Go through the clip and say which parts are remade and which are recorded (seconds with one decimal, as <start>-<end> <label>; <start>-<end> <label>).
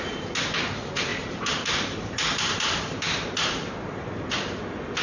0.0-1.1 recorded; 1.1-4.1 remade; 4.1-5.0 recorded